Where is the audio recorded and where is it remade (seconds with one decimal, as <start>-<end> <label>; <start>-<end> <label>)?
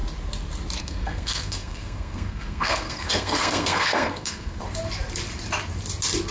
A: 0.0-0.8 recorded; 0.8-4.6 remade; 4.6-6.3 recorded